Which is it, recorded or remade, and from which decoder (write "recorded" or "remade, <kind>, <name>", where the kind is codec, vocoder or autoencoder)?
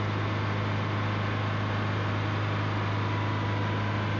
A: recorded